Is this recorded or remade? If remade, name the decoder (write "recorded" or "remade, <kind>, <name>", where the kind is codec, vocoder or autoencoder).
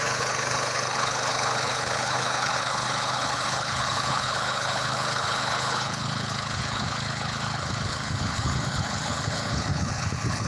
remade, codec, HILCodec